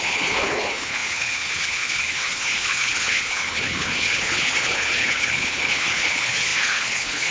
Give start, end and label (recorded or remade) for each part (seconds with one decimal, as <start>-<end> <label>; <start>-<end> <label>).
0.0-7.3 remade